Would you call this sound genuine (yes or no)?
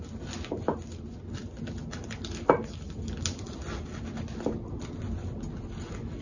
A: yes